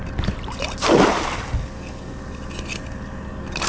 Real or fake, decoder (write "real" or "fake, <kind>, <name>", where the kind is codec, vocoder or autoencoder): real